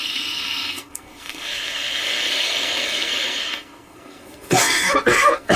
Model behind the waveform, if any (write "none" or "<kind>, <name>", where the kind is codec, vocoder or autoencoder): codec, SNAC